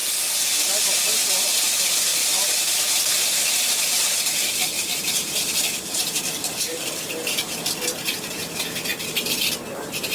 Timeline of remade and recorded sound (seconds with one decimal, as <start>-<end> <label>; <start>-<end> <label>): 0.0-0.8 recorded; 0.8-2.1 remade; 2.1-2.8 recorded; 2.8-10.1 remade